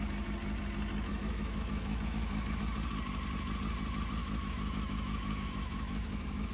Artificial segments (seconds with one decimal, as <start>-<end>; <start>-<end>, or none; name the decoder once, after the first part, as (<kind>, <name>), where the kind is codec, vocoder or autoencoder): 1.1-2.6 (autoencoder, DAC-VAE); 4.2-6.5